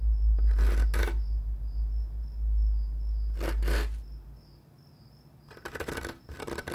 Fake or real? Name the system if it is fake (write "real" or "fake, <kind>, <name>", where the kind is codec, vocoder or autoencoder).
real